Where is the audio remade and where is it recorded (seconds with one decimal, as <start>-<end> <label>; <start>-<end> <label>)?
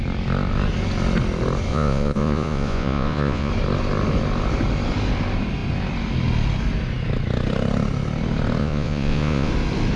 0.0-1.7 recorded; 1.7-3.5 remade; 3.5-8.6 recorded; 8.6-9.5 remade; 9.5-10.0 recorded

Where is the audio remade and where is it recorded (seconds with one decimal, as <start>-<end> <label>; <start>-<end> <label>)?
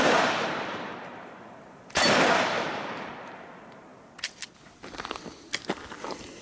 0.0-3.9 remade; 3.9-5.9 recorded; 5.9-6.4 remade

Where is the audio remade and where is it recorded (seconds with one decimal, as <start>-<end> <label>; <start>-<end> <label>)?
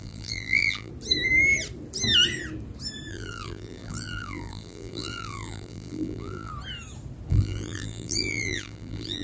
0.0-0.9 remade; 0.9-3.1 recorded; 3.1-6.5 remade; 6.5-7.3 recorded; 7.3-9.2 remade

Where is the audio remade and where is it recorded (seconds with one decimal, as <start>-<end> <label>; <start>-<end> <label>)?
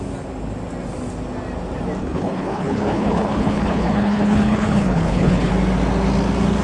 0.0-2.0 recorded; 2.0-5.5 remade; 5.5-6.6 recorded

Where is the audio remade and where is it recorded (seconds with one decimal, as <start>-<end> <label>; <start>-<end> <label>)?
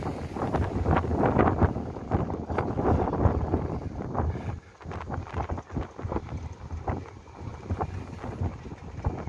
0.0-9.3 recorded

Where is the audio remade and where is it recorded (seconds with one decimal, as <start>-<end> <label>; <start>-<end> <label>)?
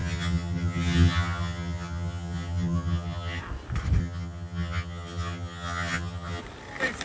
0.0-3.4 remade; 3.4-4.0 recorded; 4.0-6.4 remade; 6.4-7.0 recorded